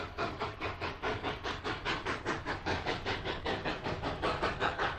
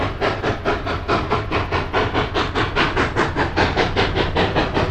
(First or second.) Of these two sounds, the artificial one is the first